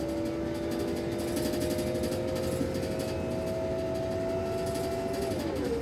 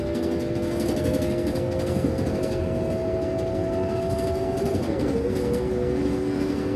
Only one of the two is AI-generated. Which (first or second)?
second